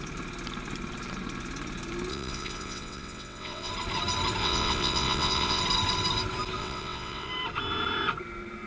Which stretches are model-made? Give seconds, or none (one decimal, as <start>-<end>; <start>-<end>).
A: 2.1-3.7; 4.4-5.6; 6.6-7.3